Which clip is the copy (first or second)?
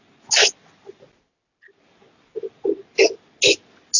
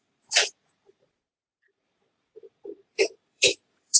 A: second